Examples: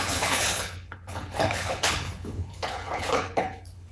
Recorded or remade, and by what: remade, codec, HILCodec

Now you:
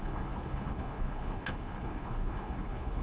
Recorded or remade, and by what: remade, codec, HILCodec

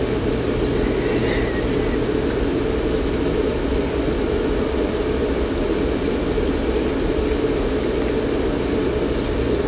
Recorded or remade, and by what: recorded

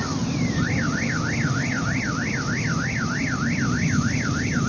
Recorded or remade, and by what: recorded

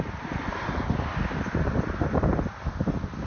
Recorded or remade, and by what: recorded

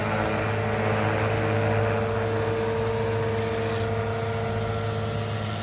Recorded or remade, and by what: recorded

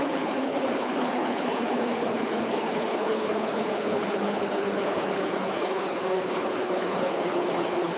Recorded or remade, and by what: remade, codec, HILCodec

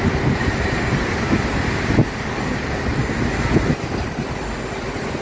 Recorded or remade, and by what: recorded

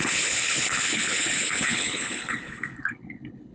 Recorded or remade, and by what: remade, codec, HILCodec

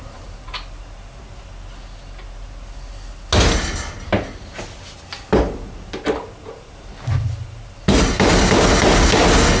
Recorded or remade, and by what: recorded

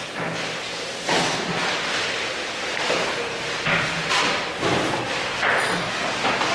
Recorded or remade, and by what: recorded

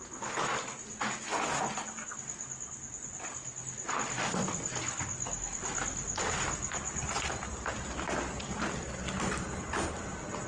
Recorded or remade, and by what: recorded